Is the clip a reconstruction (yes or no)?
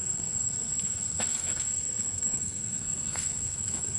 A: yes